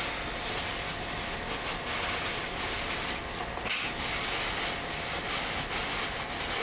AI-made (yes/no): no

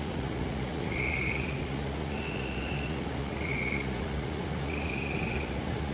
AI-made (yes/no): yes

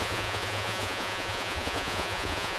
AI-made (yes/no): yes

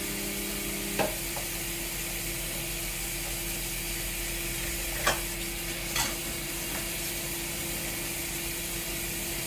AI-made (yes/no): no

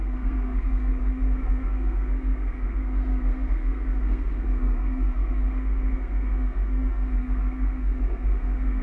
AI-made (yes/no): yes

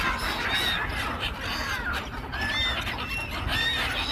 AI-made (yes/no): no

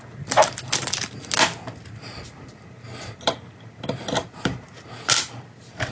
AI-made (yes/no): no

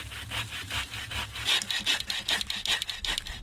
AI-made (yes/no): no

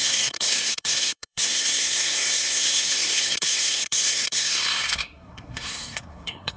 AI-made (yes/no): yes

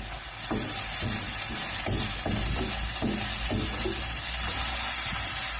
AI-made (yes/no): no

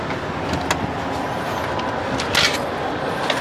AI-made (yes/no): no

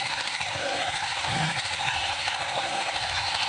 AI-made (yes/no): yes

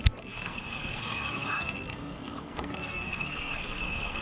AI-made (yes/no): yes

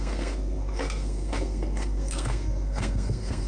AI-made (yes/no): yes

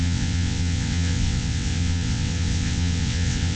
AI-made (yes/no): yes